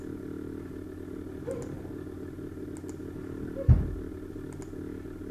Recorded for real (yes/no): yes